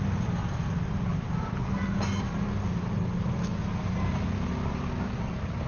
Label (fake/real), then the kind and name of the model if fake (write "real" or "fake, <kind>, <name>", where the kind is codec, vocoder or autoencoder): real